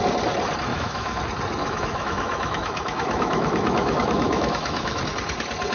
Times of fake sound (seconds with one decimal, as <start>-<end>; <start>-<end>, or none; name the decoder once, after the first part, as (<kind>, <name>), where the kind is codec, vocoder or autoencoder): 0.7-1.2 (autoencoder, DAC-VAE); 1.6-5.0